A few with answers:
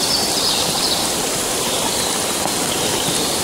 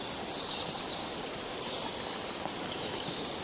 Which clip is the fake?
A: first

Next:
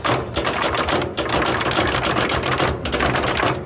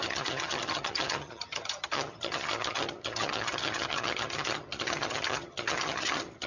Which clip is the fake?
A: second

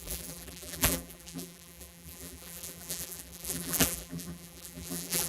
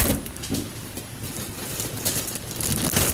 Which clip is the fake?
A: first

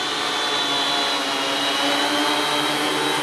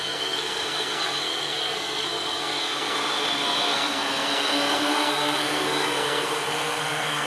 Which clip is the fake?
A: second